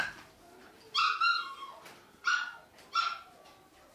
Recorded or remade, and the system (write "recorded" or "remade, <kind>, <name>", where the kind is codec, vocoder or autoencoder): recorded